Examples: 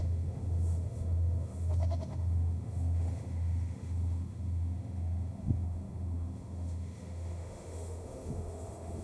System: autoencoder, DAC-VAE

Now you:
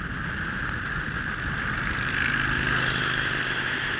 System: none